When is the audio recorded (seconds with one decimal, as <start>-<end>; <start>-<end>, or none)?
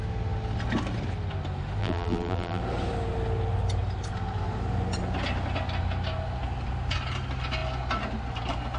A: 0.0-1.8; 2.6-8.8